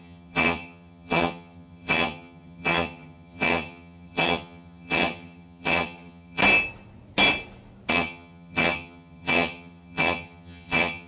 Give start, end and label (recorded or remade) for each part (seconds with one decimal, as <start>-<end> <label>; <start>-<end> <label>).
0.0-6.4 remade; 6.4-7.9 recorded; 7.9-11.1 remade